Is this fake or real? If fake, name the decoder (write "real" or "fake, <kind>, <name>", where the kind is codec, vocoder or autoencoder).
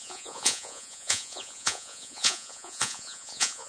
fake, vocoder, Vocos